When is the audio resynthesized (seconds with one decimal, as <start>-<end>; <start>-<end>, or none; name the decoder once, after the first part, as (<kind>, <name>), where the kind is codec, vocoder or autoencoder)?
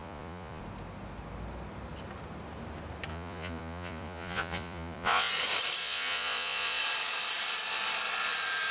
0.0-0.6 (vocoder, Vocos); 3.1-5.3; 5.8-6.8